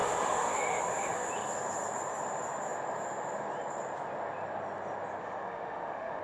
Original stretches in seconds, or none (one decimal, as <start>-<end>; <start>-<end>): 1.3-5.2